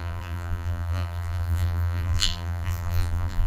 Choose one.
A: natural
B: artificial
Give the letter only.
B